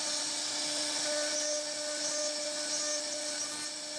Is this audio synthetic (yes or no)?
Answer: no